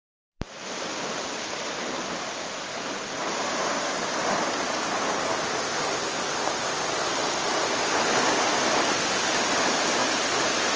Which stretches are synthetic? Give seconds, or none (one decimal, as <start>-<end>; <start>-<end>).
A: 0.0-7.2; 7.9-10.0